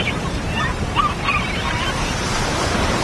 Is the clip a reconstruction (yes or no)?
yes